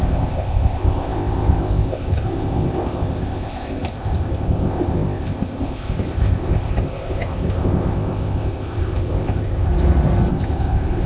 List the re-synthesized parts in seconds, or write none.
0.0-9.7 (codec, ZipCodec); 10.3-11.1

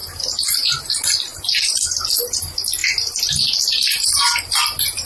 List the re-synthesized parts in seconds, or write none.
none